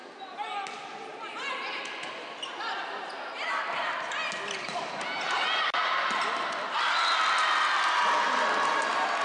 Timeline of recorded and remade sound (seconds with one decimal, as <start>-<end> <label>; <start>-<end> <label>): 0.0-9.2 recorded